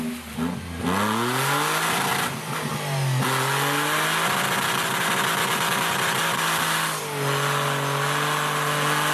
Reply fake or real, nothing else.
real